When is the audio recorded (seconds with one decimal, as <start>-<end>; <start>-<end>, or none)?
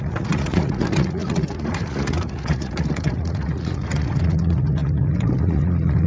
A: none